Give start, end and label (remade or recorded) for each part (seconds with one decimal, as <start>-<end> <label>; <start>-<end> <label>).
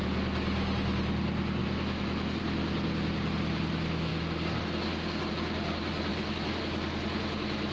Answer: 0.0-1.6 recorded; 1.6-2.4 remade; 2.4-6.1 recorded; 6.1-6.6 remade; 6.6-7.7 recorded